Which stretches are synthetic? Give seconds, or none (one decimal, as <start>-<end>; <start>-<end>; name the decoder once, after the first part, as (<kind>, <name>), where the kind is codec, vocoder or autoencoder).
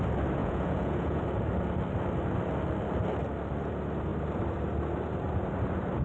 0.4-1.2 (vocoder, Vocos)